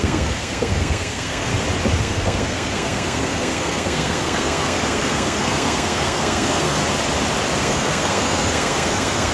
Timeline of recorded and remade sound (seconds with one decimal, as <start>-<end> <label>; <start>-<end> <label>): 0.0-1.5 remade; 1.5-2.0 recorded; 2.0-6.8 remade; 6.8-7.6 recorded; 7.6-9.3 remade